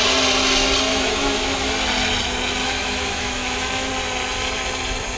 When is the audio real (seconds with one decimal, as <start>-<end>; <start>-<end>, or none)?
0.0-0.9; 1.7-2.6; 3.9-5.2